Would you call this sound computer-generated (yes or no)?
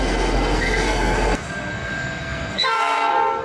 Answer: yes